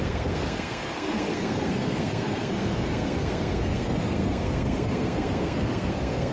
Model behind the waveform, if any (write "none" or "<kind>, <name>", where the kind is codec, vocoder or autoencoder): codec, SNAC